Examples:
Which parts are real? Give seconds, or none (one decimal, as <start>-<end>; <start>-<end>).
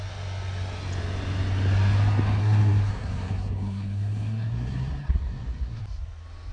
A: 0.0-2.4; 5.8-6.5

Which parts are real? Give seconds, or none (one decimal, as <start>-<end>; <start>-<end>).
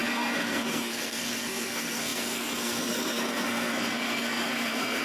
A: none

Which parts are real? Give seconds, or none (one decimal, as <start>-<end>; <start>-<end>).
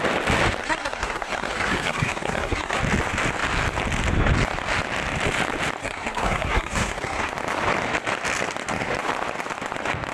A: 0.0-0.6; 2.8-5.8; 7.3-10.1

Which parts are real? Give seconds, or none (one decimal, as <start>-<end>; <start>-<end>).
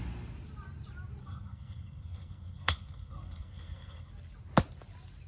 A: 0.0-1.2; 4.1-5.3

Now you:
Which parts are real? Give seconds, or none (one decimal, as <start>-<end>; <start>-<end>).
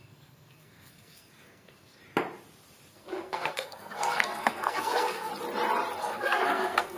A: 2.0-2.9; 5.3-6.0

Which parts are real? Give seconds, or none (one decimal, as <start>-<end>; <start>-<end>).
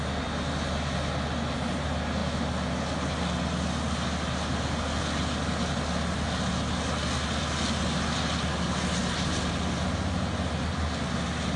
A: 0.0-11.6